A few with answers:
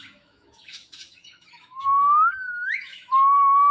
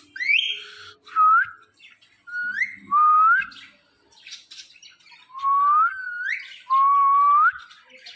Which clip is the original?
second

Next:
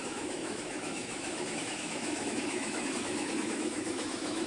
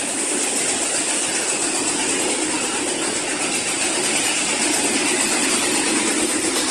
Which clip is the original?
second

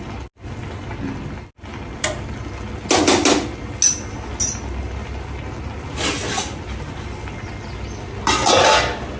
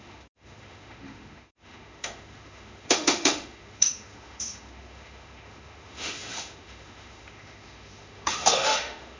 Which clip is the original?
first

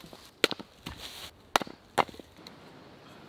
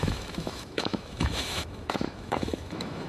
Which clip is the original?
first